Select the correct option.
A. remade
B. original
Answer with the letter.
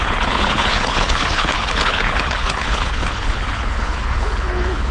A